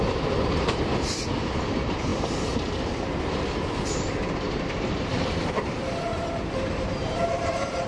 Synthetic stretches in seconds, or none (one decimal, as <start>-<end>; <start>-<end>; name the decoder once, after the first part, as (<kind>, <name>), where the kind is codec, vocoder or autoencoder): 0.0-6.1 (vocoder, BigVGAN v2); 6.7-7.9

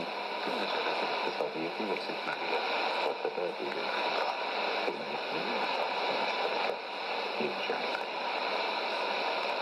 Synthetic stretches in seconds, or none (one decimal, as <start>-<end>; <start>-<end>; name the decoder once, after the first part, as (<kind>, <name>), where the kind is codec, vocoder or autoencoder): 7.9-8.8 (vocoder, BigVGAN v2)

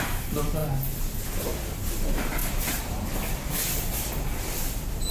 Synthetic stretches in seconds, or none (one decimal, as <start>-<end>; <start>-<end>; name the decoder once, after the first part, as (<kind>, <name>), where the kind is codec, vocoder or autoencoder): 0.0-0.6 (vocoder, BigVGAN v2); 1.4-5.1

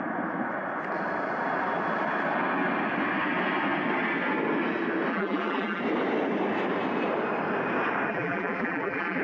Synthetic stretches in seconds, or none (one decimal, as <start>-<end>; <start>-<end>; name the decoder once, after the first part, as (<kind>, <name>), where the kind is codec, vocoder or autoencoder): 5.1-5.8 (vocoder, BigVGAN v2); 8.1-9.2

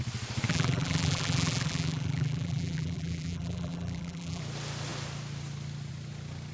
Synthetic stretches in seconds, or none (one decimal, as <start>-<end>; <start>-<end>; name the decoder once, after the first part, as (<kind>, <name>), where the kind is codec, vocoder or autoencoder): 0.5-4.4 (vocoder, BigVGAN v2)

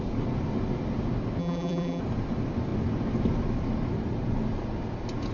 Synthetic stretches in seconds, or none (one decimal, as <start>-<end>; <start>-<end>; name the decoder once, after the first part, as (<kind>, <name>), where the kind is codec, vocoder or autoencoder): 1.4-2.0 (vocoder, BigVGAN v2)

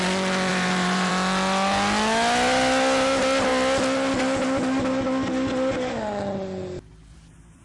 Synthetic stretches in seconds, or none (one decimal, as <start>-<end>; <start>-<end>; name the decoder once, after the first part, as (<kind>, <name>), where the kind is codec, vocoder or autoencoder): 0.5-1.1 (vocoder, BigVGAN v2)